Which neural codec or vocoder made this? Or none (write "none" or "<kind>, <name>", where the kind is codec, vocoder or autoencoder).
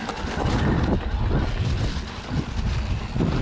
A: none